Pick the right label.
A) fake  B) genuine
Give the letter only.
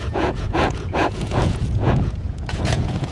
A